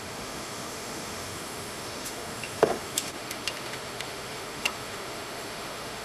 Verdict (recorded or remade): remade